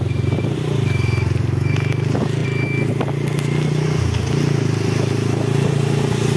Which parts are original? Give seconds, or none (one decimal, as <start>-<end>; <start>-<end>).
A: 0.0-6.4